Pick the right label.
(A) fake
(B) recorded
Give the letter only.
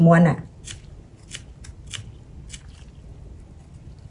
B